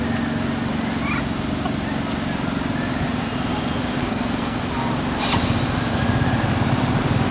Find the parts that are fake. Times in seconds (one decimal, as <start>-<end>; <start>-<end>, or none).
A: 4.0-4.6